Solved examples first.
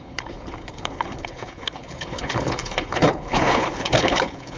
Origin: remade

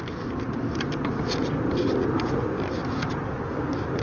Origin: recorded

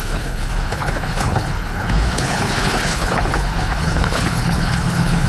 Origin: remade